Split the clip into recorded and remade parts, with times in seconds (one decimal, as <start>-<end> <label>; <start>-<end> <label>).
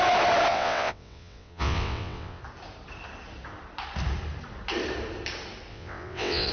0.0-0.5 recorded; 0.5-2.4 remade; 2.4-5.7 recorded; 5.7-6.5 remade